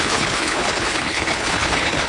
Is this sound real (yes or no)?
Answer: no